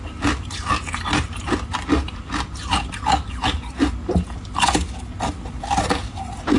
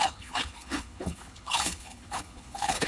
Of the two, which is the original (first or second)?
first